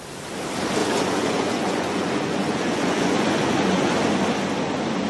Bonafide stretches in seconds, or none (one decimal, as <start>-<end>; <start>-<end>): 0.0-0.8; 3.9-5.1